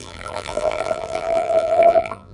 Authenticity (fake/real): fake